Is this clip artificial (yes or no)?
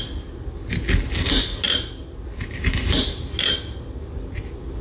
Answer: no